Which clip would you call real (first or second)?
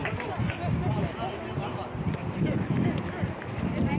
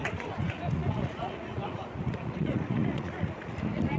first